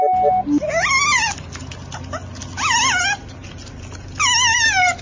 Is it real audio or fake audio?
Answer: real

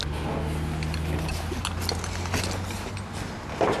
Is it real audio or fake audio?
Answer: real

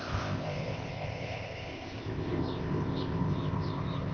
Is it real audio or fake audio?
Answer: fake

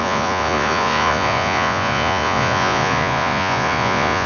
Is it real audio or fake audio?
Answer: fake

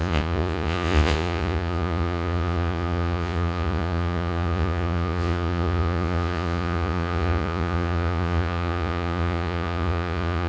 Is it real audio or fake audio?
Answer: fake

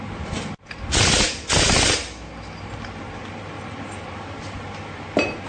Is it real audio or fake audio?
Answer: real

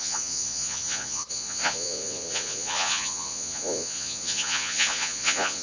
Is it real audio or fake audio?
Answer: fake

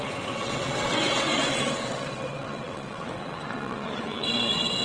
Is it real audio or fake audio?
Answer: fake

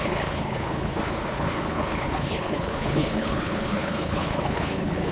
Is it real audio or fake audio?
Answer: fake